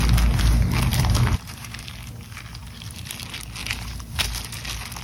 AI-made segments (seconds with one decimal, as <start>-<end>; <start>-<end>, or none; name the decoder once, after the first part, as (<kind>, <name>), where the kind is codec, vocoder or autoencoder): 0.9-1.8 (vocoder, BigVGAN v2); 2.6-3.1; 3.6-4.2